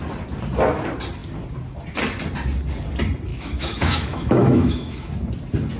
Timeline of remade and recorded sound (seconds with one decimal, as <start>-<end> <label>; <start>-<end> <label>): 0.0-3.3 recorded; 3.3-5.1 remade; 5.1-5.8 recorded